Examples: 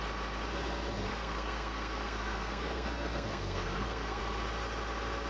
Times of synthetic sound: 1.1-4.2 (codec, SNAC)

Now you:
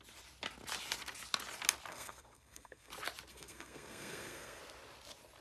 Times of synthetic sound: 1.9-2.9 (codec, SNAC); 3.3-4.6

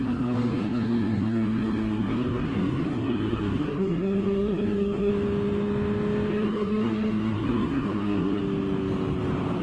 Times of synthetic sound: 0.0-5.1 (codec, SNAC); 6.3-8.4

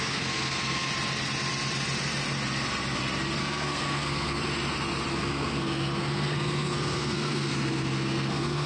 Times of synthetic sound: 0.0-0.9 (codec, SNAC); 3.4-4.4; 5.1-8.7